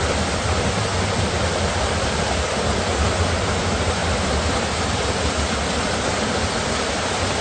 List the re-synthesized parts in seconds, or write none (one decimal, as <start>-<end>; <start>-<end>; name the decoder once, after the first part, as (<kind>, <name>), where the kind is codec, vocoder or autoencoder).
none